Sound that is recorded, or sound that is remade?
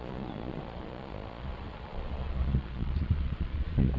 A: remade